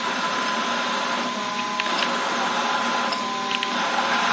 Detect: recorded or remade recorded